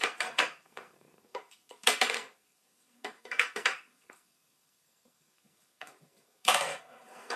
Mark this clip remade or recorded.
remade